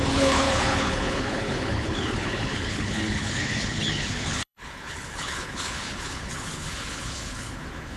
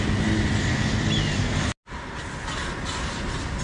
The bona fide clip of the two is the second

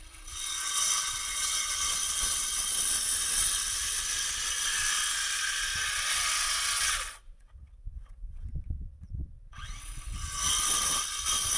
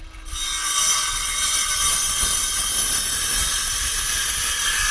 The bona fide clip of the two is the second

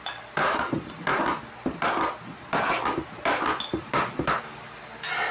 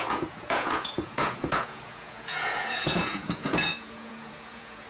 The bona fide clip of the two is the first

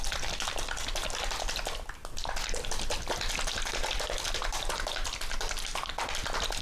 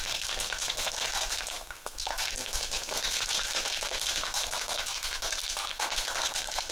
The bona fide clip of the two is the first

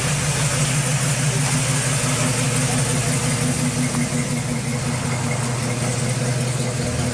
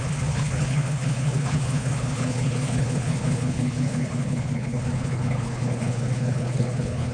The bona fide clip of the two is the first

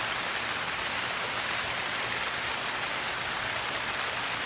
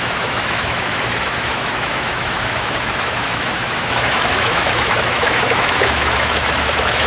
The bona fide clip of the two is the first